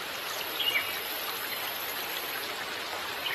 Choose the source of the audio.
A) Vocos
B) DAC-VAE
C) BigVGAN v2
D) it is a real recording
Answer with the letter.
D